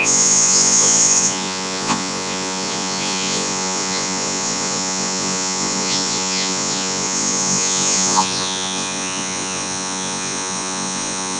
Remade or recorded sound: remade